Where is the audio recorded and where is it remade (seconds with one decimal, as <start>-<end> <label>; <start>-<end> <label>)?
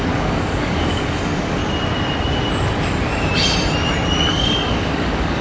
0.0-1.6 remade; 1.6-4.3 recorded; 4.3-5.4 remade